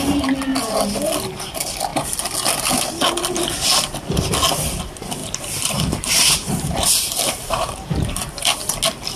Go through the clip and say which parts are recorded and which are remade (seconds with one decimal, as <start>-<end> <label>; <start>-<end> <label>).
0.0-5.2 recorded; 5.2-8.4 remade; 8.4-9.2 recorded